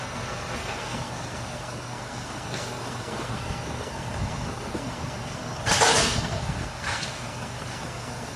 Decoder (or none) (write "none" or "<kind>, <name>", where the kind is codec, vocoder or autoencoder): codec, SNAC